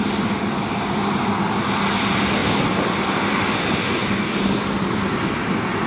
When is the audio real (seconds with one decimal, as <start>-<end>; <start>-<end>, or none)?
0.0-2.4; 3.6-4.0; 5.0-5.9